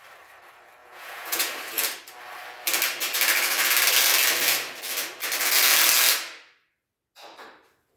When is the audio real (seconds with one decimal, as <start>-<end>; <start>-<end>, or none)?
0.0-0.8; 1.5-8.0